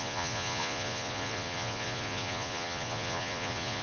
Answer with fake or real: fake